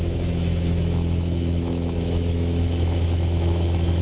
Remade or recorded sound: remade